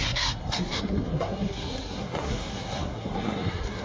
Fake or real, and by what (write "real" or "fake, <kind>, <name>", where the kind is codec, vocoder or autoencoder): fake, codec, SNAC